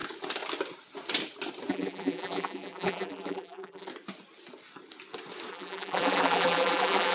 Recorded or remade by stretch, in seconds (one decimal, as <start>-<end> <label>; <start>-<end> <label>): 0.0-1.7 recorded; 1.7-3.9 remade; 3.9-5.5 recorded; 5.5-7.1 remade